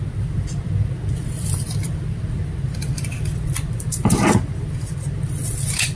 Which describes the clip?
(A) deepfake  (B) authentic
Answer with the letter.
A